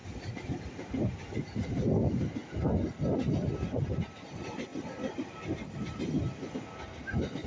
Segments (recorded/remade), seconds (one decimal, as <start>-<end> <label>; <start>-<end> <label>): 0.0-0.6 remade; 0.6-7.5 recorded